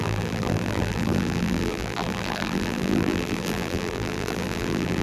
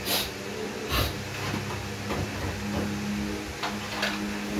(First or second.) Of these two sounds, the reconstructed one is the first